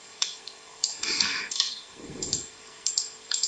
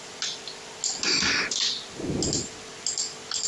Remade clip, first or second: first